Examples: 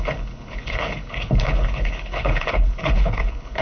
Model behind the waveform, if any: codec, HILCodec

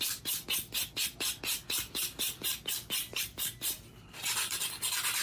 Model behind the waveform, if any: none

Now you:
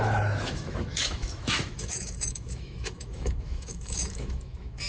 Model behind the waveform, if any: autoencoder, DAC-VAE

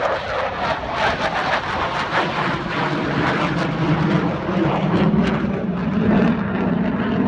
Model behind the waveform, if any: none